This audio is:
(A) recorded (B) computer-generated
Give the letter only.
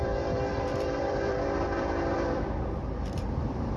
B